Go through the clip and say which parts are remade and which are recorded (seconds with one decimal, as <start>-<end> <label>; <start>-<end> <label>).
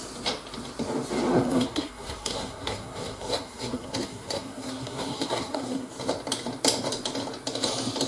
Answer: 0.0-1.3 recorded; 1.3-5.9 remade; 5.9-8.1 recorded